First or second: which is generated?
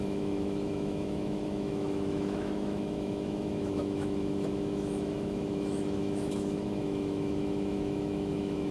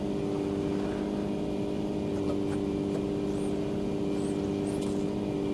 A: first